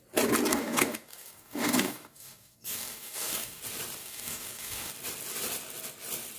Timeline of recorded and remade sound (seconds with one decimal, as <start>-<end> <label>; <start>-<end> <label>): 0.0-0.5 recorded; 0.5-3.6 remade; 3.6-4.0 recorded; 4.0-4.9 remade; 4.9-6.4 recorded